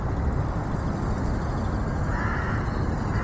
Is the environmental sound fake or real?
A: real